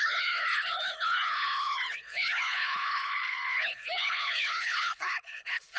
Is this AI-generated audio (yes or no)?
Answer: yes